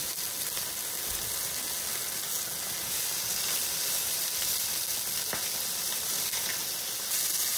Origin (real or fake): real